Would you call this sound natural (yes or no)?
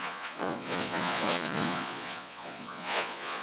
no